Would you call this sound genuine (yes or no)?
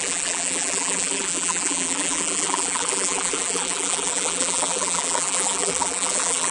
no